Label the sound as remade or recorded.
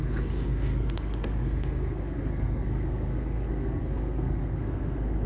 remade